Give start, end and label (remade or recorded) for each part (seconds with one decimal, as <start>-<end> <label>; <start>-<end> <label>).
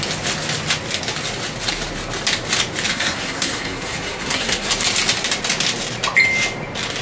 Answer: 0.0-2.9 recorded; 2.9-4.7 remade; 4.7-7.0 recorded